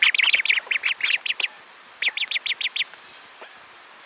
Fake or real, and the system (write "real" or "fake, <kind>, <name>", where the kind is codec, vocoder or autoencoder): real